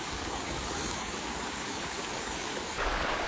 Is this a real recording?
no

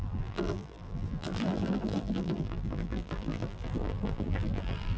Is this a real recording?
no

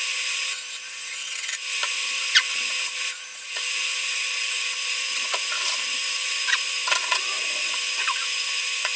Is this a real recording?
no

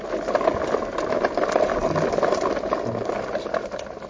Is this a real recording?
yes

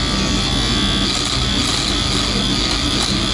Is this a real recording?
yes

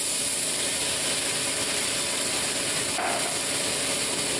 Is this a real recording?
yes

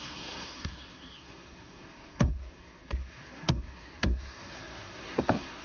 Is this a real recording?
no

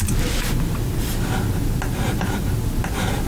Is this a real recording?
yes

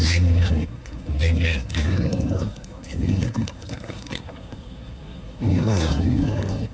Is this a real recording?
no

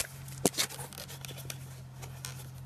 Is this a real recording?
yes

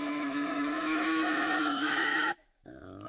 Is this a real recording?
no